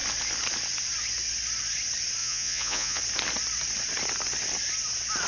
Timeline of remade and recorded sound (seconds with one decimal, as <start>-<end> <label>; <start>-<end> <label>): 0.0-2.2 recorded; 2.2-3.0 remade; 3.0-5.3 recorded

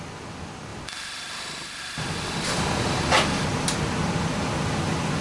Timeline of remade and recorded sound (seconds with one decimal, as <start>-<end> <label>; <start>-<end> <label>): 0.0-5.2 recorded

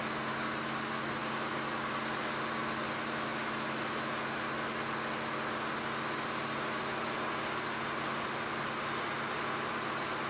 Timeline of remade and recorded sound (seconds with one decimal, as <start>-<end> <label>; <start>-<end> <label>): 0.0-10.3 recorded

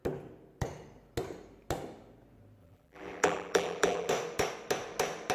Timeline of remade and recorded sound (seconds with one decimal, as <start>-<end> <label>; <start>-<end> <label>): 0.0-2.6 recorded; 2.6-4.1 remade; 4.1-5.3 recorded

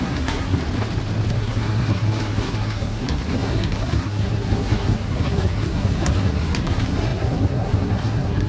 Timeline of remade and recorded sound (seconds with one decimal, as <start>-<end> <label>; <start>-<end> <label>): 0.0-0.6 remade; 0.6-1.3 recorded; 1.3-8.5 remade

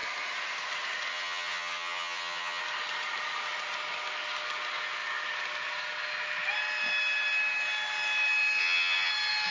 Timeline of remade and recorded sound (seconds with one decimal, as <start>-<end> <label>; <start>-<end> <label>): 0.0-1.1 recorded; 1.1-2.6 remade; 2.6-8.6 recorded; 8.6-9.1 remade; 9.1-9.5 recorded

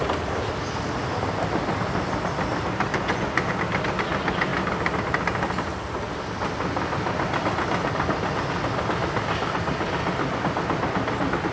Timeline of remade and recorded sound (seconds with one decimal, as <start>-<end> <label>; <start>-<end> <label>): 0.0-2.9 recorded; 2.9-3.5 remade; 3.5-11.5 recorded

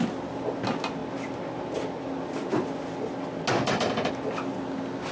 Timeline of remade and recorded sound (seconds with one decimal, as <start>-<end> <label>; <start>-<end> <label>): 0.0-5.1 recorded